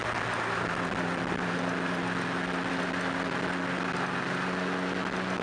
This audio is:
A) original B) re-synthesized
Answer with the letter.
A